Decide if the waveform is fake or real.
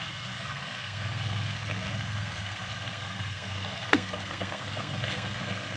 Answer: fake